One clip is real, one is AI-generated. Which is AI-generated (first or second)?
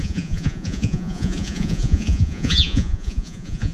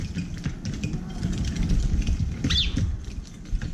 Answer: first